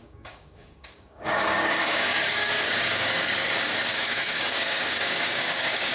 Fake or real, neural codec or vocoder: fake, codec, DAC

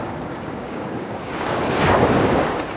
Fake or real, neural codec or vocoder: fake, codec, DAC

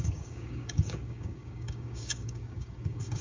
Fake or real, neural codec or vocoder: fake, codec, DAC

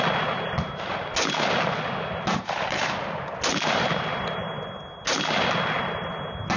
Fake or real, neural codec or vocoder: real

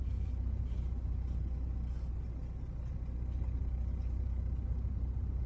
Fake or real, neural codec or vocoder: real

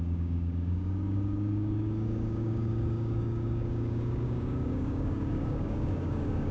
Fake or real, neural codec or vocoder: fake, codec, DAC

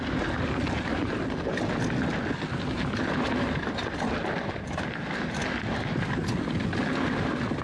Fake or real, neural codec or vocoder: real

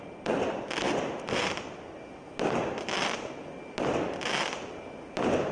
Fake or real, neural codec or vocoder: real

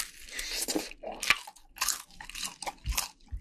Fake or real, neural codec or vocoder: real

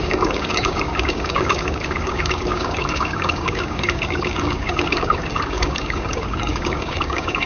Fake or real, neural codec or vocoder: fake, codec, DAC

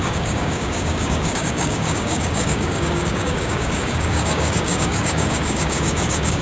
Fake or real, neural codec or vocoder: fake, codec, DAC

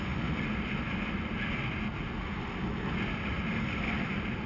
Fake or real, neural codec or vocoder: real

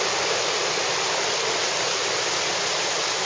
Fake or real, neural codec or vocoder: real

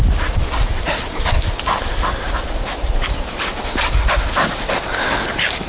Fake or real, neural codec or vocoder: real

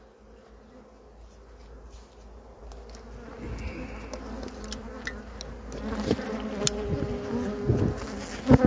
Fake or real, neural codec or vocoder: real